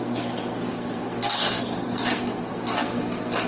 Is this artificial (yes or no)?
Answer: yes